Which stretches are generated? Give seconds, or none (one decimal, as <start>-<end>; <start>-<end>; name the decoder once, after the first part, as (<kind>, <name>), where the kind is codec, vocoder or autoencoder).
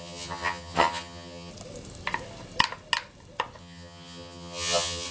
0.0-1.5 (vocoder, HiFi-GAN); 3.6-5.1